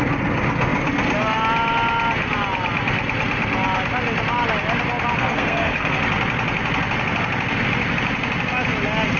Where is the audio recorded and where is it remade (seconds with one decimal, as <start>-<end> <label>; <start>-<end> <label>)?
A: 0.0-5.2 recorded; 5.2-6.0 remade; 6.0-9.2 recorded